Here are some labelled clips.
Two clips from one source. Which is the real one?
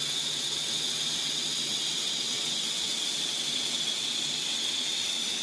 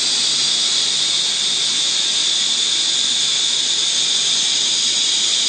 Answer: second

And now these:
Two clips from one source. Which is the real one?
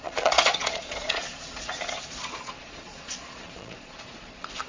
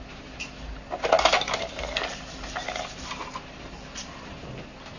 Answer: second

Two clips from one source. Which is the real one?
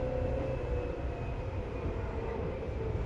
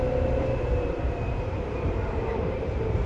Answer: first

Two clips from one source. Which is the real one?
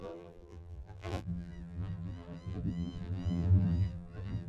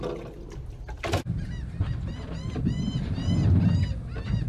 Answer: second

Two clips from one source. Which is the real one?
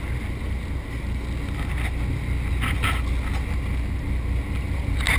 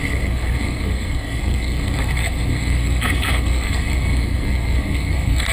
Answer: first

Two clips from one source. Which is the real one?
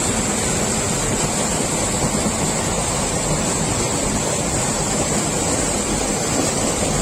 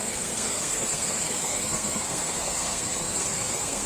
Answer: first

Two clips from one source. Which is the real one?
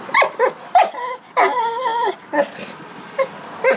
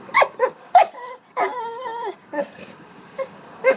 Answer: first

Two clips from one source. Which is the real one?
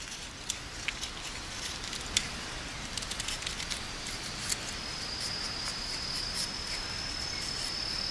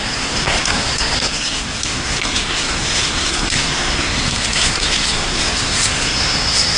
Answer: first